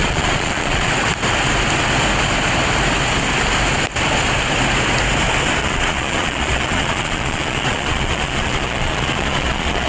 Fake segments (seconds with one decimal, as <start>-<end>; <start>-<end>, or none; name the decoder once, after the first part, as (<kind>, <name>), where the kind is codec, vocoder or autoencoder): 0.0-0.9 (vocoder, Vocos); 5.6-9.9